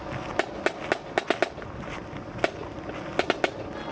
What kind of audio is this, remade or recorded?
recorded